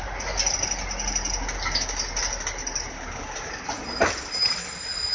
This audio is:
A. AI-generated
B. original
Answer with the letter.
B